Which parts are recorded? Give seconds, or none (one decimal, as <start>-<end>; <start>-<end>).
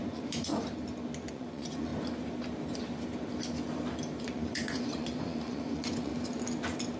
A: 0.5-1.3; 1.9-4.2; 6.1-7.0